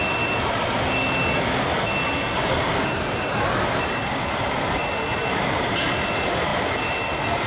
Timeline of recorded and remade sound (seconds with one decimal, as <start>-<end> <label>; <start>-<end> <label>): 0.0-2.4 recorded; 2.4-3.8 remade; 3.8-5.1 recorded; 5.1-5.9 remade; 5.9-7.5 recorded